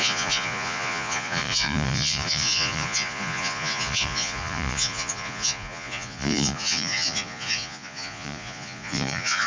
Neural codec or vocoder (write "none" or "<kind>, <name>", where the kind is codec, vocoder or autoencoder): vocoder, Vocos